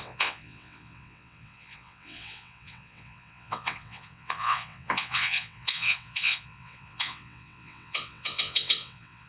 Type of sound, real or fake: fake